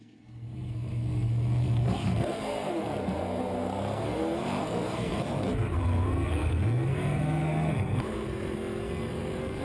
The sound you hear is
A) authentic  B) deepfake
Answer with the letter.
B